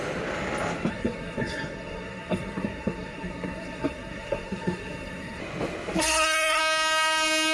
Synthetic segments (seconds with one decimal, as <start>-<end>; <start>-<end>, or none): 0.9-5.4; 6.0-6.6